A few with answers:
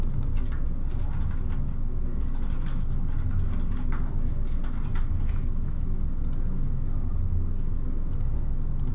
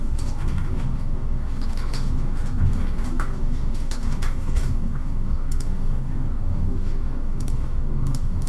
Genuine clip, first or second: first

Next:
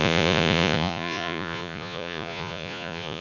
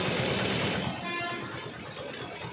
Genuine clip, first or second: second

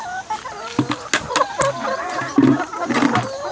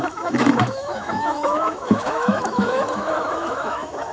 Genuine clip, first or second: first